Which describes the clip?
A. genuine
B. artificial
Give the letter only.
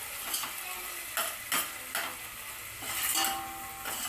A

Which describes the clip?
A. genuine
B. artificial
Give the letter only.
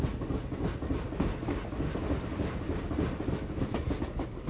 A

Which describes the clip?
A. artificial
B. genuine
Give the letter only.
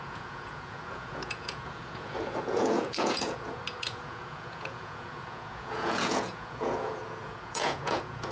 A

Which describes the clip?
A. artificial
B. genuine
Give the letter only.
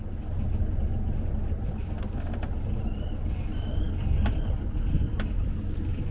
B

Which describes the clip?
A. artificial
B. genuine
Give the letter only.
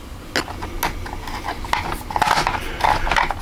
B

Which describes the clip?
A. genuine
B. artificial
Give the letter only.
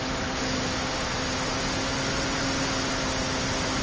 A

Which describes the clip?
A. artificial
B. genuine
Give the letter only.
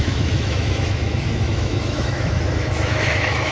A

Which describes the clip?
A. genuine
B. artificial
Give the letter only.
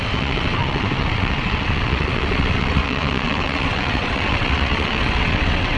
B